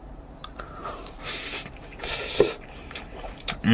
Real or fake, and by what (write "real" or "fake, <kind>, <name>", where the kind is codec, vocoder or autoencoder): fake, vocoder, BigVGAN v2